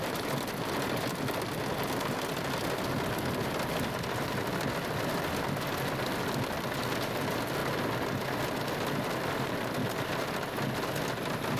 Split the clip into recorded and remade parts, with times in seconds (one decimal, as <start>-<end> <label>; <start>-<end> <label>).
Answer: 0.0-11.6 recorded